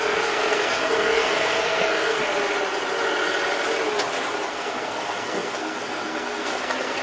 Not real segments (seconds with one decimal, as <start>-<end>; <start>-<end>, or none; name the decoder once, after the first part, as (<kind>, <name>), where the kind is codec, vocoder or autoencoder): 0.0-2.2 (codec, SNAC); 4.5-7.0